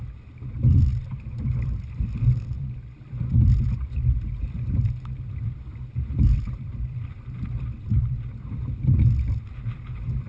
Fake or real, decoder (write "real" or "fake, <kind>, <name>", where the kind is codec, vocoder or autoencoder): real